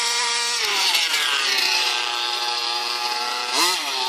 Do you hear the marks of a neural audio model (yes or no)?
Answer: yes